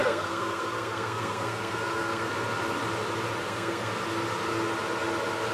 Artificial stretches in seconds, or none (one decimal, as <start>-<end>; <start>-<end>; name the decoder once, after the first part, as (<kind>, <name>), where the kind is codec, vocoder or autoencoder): 0.0-2.3 (codec, SNAC); 3.4-3.9